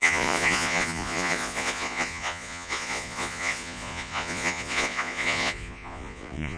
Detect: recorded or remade remade